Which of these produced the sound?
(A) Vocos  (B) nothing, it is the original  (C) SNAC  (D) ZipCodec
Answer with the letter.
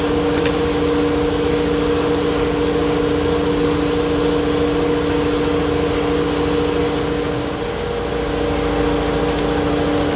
B